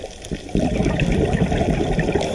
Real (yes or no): yes